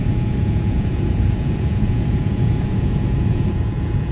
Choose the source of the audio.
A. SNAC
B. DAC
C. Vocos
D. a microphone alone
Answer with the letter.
C